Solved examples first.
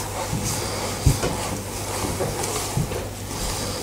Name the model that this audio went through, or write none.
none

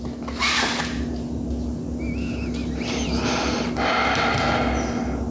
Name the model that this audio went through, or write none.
none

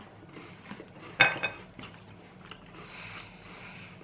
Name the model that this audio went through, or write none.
none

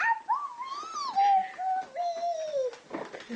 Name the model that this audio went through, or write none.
none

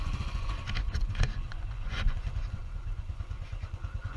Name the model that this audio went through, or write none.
vocoder, Vocos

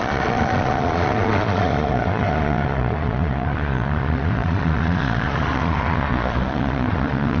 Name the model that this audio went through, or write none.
vocoder, Vocos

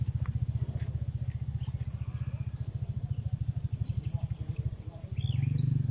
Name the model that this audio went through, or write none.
none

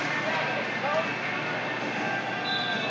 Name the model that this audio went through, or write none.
none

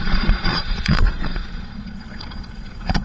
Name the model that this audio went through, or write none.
vocoder, Vocos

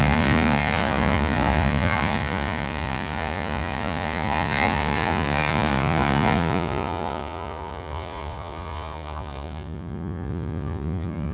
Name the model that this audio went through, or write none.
vocoder, Vocos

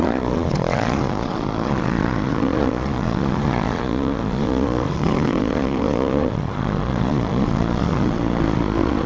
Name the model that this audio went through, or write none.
vocoder, Vocos